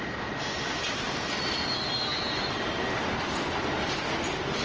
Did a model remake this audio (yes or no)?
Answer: no